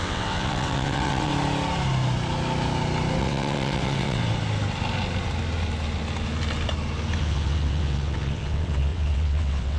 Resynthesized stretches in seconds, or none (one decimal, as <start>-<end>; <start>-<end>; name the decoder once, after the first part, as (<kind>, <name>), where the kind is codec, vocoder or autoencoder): 0.0-1.3 (vocoder, WaveNeXt); 3.2-4.2; 7.2-9.8